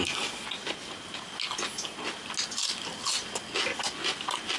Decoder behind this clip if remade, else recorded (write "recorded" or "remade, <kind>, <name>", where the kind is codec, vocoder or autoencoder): recorded